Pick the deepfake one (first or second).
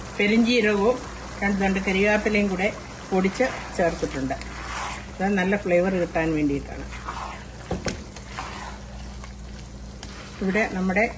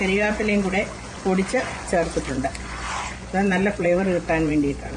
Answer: second